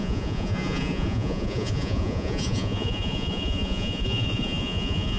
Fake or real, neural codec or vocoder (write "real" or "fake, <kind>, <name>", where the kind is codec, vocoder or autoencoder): fake, vocoder, Vocos